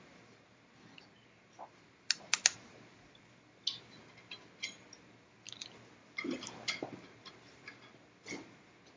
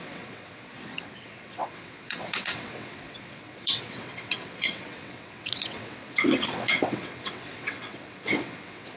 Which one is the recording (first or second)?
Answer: first